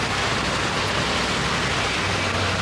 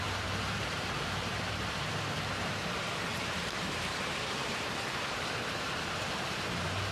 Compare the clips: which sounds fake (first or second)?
second